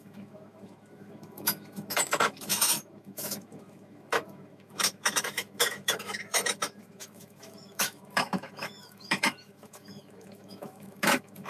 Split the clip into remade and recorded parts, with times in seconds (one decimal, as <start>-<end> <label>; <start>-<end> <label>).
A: 0.0-11.5 remade